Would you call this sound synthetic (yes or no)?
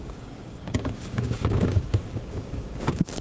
yes